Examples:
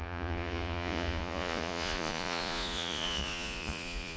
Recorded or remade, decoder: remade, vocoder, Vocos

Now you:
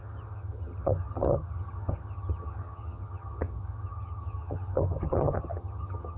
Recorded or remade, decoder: remade, vocoder, HiFi-GAN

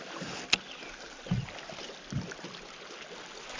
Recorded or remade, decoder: recorded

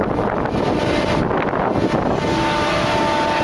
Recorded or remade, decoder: recorded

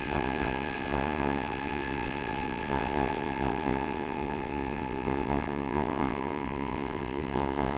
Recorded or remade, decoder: remade, vocoder, WaveNeXt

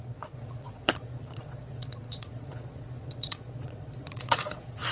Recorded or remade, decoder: remade, vocoder, Vocos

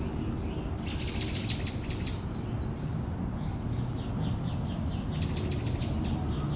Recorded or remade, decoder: recorded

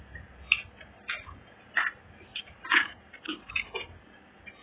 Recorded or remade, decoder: recorded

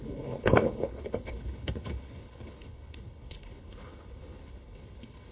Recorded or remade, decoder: remade, codec, HILCodec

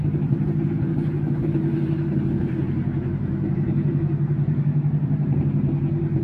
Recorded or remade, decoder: remade, vocoder, BigVGAN v2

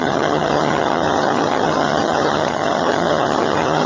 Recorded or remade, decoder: remade, vocoder, HiFi-GAN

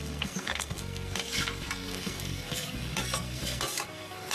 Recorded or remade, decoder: remade, codec, SNAC